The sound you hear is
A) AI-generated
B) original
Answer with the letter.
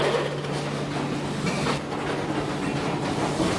B